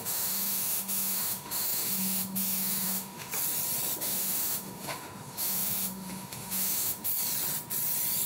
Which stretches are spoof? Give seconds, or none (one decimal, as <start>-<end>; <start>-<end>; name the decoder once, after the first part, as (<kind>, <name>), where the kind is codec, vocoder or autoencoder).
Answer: 0.0-3.3 (autoencoder, DAC-VAE); 4.0-7.1